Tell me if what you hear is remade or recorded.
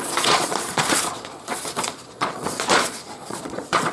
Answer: remade